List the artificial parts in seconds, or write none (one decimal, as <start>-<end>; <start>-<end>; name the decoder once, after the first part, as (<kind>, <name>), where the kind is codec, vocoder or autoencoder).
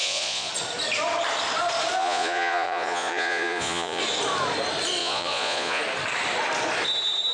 0.0-0.5 (vocoder, Vocos); 2.0-4.0; 5.0-5.8